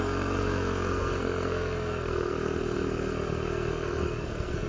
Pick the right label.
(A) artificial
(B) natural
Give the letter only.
A